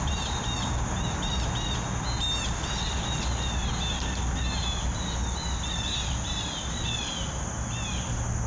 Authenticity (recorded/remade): recorded